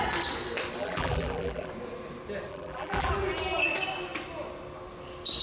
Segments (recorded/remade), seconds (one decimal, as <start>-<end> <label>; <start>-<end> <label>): 0.0-0.8 recorded; 0.8-1.7 remade; 1.7-2.5 recorded; 2.5-3.1 remade; 3.1-5.4 recorded